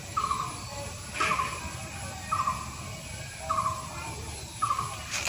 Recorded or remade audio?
recorded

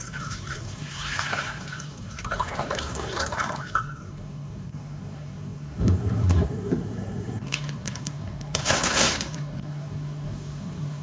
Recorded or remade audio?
remade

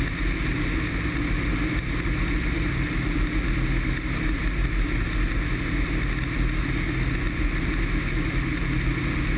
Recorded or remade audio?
recorded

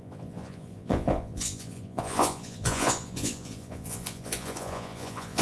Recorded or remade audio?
remade